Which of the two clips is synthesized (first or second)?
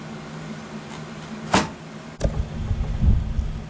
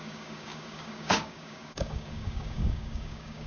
second